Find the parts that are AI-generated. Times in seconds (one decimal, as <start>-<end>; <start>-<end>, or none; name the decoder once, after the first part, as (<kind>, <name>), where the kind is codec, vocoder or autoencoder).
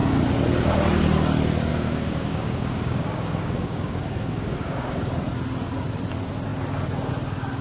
1.7-5.1 (codec, DAC)